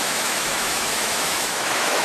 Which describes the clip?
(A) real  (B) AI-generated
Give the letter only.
B